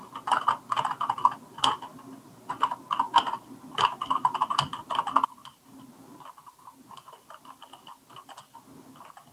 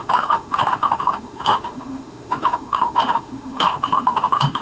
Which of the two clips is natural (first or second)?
first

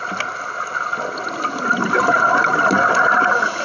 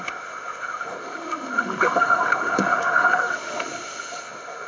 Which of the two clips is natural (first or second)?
first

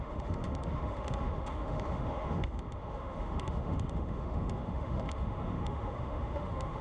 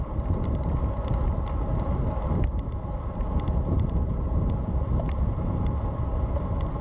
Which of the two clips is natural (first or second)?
second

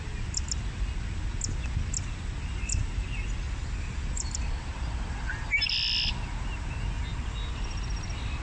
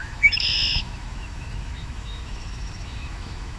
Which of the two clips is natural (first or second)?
first